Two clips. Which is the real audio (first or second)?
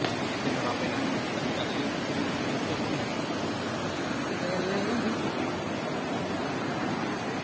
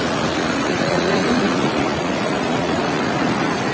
first